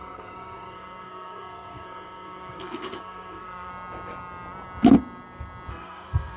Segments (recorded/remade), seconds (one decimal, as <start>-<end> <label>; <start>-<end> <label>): 0.0-3.7 remade; 3.7-5.7 recorded; 5.7-6.4 remade